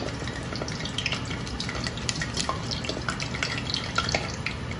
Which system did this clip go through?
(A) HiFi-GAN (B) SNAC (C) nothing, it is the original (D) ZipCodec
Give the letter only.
C